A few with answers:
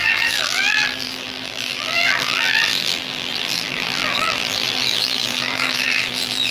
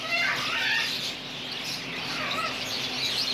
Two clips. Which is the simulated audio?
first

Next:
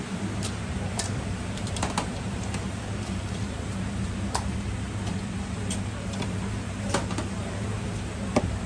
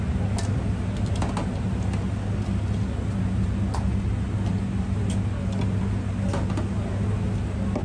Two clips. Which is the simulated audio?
first